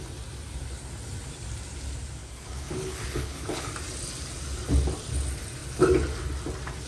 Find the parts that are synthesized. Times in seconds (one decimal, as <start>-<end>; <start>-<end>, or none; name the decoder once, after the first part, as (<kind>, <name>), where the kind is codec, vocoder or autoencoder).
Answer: 2.2-3.7 (codec, HILCodec)